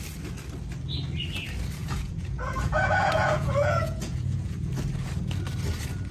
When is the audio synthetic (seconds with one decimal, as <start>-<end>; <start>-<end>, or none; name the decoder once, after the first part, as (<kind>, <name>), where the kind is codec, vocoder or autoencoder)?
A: 1.8-4.7 (vocoder, Vocos)